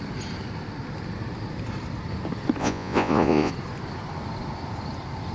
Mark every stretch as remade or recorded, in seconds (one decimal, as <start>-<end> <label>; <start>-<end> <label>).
0.0-2.6 recorded; 2.6-3.5 remade; 3.5-5.3 recorded